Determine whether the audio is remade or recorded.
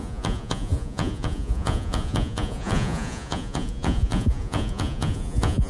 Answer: remade